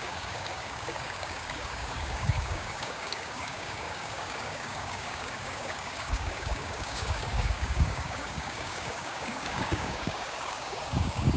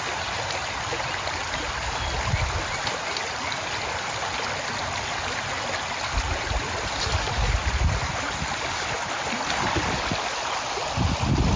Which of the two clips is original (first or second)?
second